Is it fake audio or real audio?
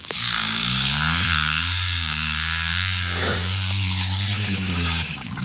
fake